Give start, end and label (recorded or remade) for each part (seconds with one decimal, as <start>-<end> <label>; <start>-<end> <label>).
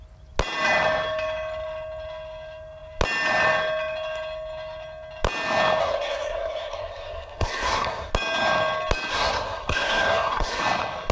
0.0-5.8 recorded; 5.8-8.1 remade; 8.1-9.1 recorded; 9.1-10.6 remade; 10.6-11.1 recorded